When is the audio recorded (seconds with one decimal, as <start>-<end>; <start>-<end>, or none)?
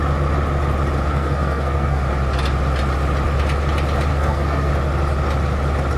0.0-1.1; 2.0-4.1; 4.7-6.0